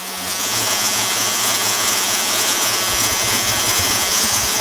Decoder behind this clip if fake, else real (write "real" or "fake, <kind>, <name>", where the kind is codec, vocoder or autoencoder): fake, vocoder, Vocos